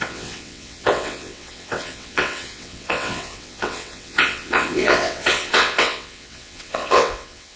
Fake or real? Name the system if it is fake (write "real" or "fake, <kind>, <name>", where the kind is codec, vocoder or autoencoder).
fake, vocoder, WaveNeXt